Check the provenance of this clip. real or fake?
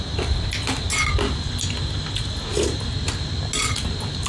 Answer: real